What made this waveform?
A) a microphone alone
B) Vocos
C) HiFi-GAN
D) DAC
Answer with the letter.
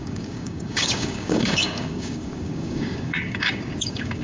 D